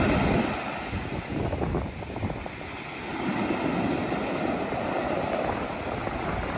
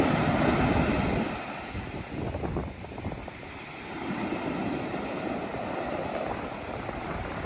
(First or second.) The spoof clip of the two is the second